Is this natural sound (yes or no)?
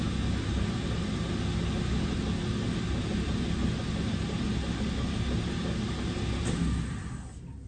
yes